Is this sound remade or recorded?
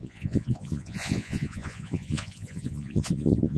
remade